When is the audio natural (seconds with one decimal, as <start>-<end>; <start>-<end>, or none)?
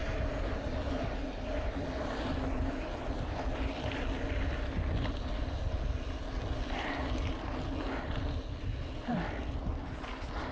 0.0-10.5